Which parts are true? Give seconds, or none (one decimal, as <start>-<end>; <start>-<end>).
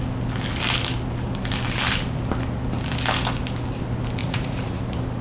0.0-4.2; 4.8-5.2